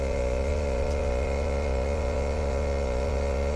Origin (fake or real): fake